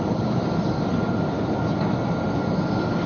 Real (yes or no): yes